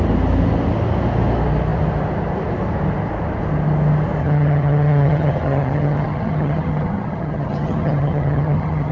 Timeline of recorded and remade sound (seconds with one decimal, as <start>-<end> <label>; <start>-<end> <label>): 0.0-4.2 recorded; 4.2-8.9 remade